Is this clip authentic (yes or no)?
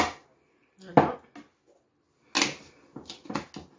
yes